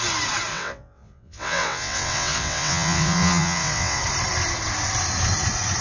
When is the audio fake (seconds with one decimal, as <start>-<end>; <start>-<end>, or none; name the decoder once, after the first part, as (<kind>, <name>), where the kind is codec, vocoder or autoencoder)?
0.5-4.0 (vocoder, WaveNeXt)